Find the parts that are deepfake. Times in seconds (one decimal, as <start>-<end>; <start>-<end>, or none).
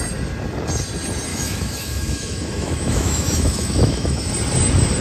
1.3-4.3